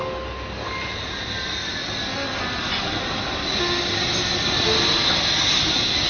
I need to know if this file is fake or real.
real